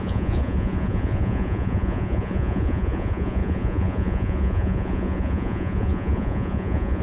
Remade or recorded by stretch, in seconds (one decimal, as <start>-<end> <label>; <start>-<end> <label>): 0.0-7.0 remade